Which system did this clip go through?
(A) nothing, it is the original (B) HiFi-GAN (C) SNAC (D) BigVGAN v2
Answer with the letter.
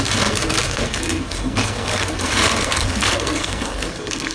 C